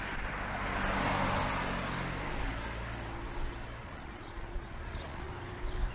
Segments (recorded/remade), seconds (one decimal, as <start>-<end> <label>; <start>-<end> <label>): 0.0-3.8 recorded; 3.8-5.3 remade; 5.3-5.9 recorded